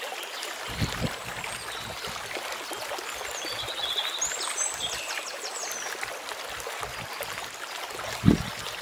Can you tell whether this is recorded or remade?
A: recorded